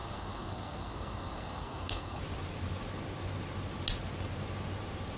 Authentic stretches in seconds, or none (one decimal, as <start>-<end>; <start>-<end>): 2.2-5.2